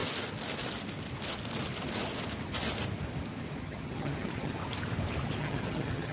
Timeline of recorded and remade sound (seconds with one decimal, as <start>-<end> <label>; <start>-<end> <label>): 0.0-3.6 recorded; 3.6-4.6 remade; 4.6-5.4 recorded; 5.4-6.1 remade

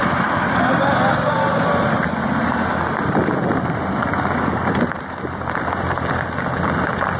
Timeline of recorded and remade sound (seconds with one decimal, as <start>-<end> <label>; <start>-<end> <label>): 0.0-3.4 recorded; 3.4-5.6 remade; 5.6-7.2 recorded

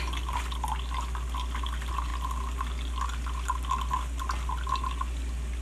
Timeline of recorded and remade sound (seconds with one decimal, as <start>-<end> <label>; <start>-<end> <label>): 0.0-5.6 recorded